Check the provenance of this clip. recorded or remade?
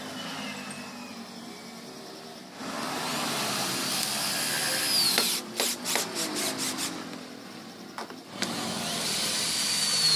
recorded